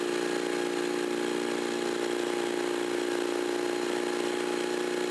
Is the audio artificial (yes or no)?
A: no